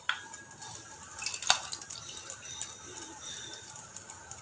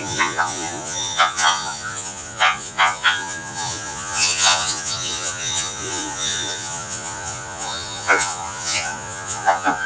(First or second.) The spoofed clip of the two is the second